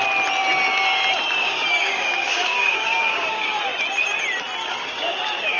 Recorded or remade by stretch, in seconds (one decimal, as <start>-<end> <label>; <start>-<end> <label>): 0.0-1.4 recorded; 1.4-3.6 remade; 3.6-4.6 recorded; 4.6-5.6 remade